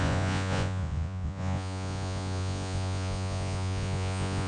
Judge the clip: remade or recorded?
remade